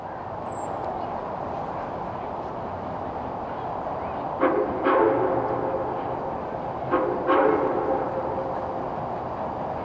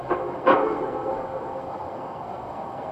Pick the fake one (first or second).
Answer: second